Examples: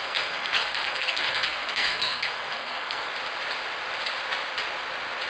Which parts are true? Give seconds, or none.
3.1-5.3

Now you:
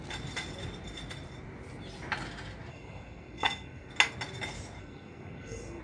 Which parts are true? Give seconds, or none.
0.0-2.7; 3.9-4.8

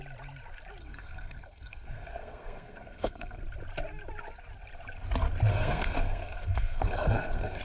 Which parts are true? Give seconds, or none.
0.0-0.8; 3.4-5.5

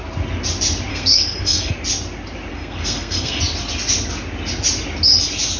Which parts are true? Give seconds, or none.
0.0-0.9; 1.7-2.5; 3.4-5.6